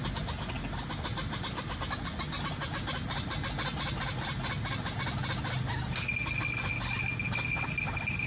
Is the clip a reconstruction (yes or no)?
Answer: no